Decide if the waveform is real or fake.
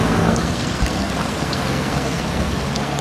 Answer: fake